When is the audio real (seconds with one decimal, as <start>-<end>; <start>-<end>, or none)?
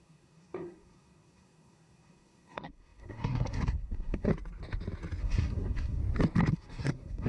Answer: 4.3-5.2; 6.0-6.5